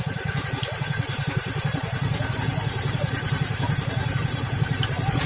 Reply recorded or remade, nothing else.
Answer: remade